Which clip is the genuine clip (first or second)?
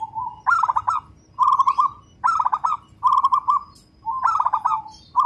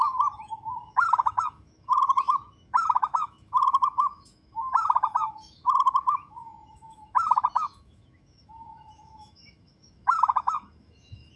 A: first